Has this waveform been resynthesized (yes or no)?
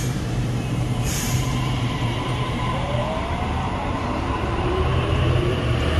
yes